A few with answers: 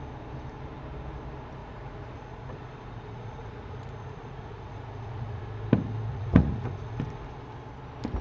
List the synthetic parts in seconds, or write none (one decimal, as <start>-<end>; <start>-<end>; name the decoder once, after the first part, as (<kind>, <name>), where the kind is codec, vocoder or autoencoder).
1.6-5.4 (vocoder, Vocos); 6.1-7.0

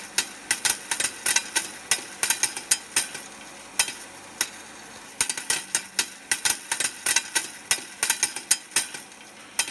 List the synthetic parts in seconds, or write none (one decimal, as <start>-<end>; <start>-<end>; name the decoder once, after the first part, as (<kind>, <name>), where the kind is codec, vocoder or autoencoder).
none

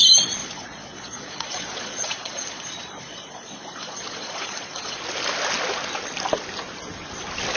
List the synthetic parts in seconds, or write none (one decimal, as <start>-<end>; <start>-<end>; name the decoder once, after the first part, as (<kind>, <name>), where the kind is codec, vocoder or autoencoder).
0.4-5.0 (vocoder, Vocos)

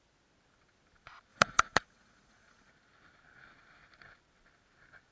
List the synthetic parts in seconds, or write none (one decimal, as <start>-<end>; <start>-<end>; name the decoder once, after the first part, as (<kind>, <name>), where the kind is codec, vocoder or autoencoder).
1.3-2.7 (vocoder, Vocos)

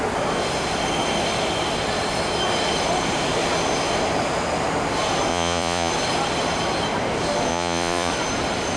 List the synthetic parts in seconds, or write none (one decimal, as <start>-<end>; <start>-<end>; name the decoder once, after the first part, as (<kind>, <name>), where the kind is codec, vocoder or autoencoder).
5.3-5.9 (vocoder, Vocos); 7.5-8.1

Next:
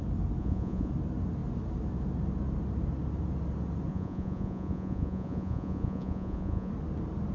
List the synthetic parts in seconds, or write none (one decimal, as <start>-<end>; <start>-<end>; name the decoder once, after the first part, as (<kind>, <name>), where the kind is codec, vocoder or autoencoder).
0.4-0.9 (vocoder, Vocos); 3.9-6.7

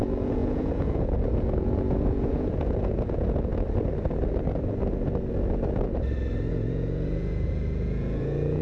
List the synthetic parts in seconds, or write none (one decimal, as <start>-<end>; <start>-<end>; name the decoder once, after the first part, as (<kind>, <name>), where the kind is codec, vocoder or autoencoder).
0.0-3.5 (vocoder, Vocos); 6.5-8.6